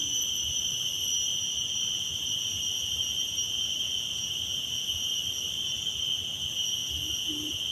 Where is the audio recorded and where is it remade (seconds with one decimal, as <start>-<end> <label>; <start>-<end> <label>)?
0.0-7.7 recorded

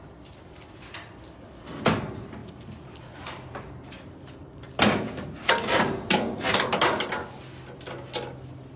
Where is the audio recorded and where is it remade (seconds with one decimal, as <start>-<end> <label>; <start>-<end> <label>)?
0.0-2.4 recorded; 2.4-6.8 remade; 6.8-8.8 recorded

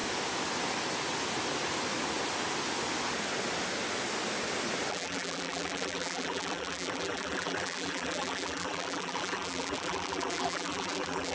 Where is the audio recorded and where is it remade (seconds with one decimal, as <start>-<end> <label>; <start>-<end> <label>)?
0.0-4.9 recorded; 4.9-11.3 remade

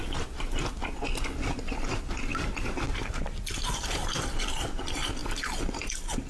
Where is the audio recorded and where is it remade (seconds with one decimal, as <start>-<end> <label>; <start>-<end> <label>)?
0.0-2.3 recorded; 2.3-4.8 remade; 4.8-6.3 recorded

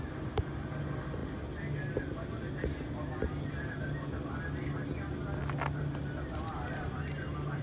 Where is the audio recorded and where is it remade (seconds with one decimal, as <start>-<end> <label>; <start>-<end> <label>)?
0.0-7.6 recorded

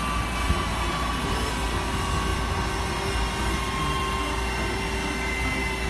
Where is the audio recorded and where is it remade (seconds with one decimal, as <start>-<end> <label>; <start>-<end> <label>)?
0.0-0.7 recorded; 0.7-1.5 remade; 1.5-2.3 recorded; 2.3-2.9 remade; 2.9-5.9 recorded

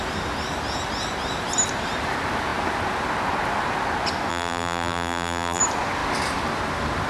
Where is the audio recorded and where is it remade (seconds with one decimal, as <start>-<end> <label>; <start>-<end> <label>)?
0.0-4.3 recorded; 4.3-5.6 remade; 5.6-7.1 recorded

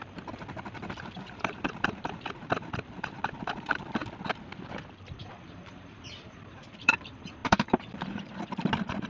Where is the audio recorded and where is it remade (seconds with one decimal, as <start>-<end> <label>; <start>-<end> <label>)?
0.0-4.0 remade; 4.0-5.2 recorded; 5.2-9.1 remade